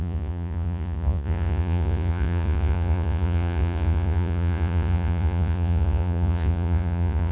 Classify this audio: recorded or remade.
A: remade